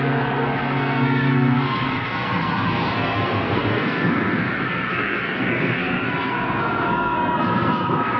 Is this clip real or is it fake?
fake